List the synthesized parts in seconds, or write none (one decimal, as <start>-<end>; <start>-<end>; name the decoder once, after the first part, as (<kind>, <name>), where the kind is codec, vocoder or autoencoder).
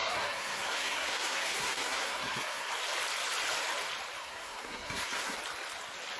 0.0-2.7 (codec, SNAC); 4.2-5.4